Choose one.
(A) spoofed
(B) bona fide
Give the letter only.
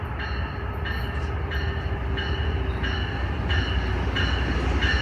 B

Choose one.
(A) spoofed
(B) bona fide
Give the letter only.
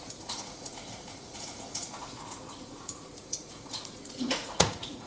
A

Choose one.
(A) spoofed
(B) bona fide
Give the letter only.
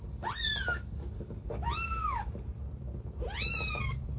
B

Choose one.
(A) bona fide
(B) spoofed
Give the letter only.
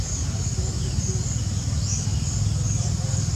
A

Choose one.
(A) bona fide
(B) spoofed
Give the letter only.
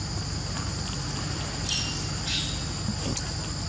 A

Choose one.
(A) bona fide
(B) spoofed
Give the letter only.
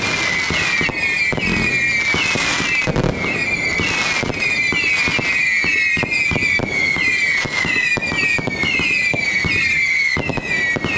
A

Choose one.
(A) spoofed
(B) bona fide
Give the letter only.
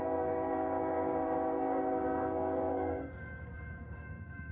A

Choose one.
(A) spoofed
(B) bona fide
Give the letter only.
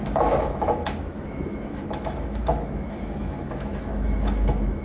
A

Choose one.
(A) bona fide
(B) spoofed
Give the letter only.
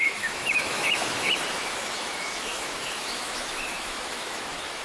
B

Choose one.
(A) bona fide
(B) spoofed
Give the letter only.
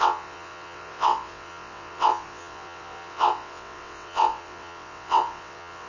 B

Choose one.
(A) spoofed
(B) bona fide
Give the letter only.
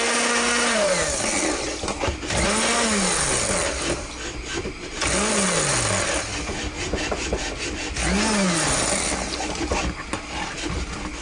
B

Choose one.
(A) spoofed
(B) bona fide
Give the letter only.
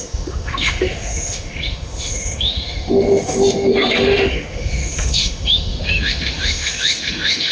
A